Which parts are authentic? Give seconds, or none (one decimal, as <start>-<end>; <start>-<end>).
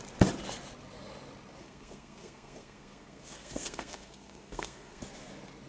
0.0-1.6; 5.0-5.7